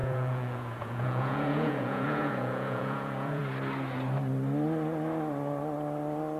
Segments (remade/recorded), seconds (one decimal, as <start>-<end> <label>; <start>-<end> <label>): 0.0-3.4 remade; 3.4-6.4 recorded